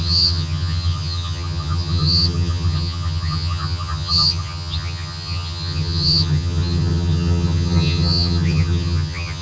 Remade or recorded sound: remade